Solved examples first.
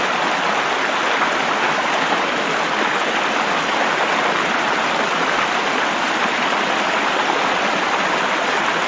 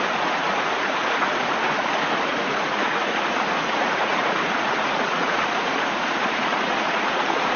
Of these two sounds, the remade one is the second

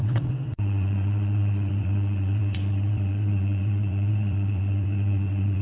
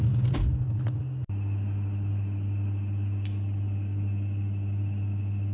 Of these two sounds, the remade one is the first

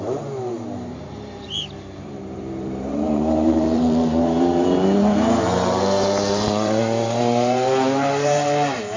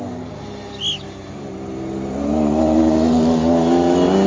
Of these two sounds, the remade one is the first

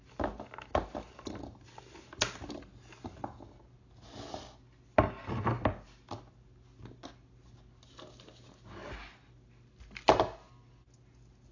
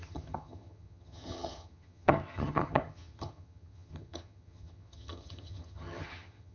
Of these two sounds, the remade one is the second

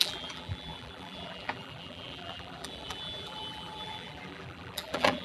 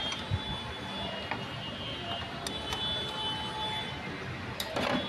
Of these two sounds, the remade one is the first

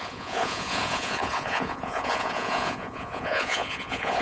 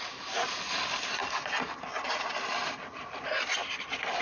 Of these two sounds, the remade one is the first